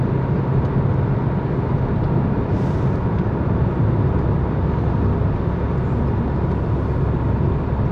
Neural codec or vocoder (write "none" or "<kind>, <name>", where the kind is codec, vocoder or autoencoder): none